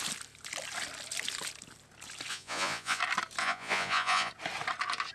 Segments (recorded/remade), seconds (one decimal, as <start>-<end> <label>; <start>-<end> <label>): 0.0-2.3 recorded; 2.3-3.0 remade; 3.0-3.4 recorded; 3.4-4.3 remade; 4.3-5.1 recorded